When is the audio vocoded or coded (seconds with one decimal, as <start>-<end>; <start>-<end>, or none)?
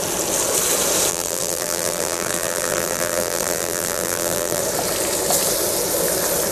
1.1-4.6